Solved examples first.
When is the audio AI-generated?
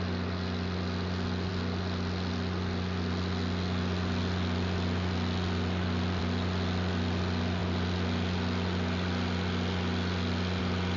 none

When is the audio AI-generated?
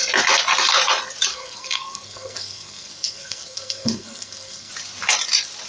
1.3-4.7 (codec, SNAC)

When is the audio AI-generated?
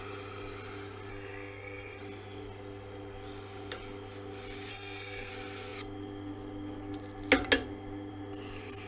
1.1-2.0 (codec, SNAC); 4.7-5.3